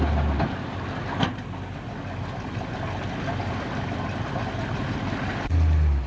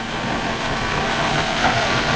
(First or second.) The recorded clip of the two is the first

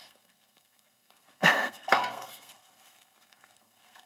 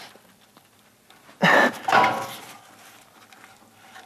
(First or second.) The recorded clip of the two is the second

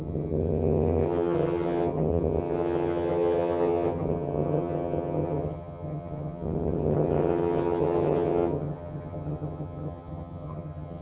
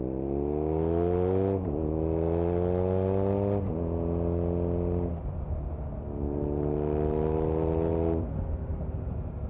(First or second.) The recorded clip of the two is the second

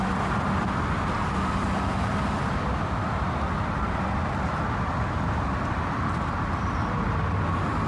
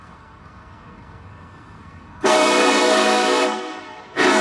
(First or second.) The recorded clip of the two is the first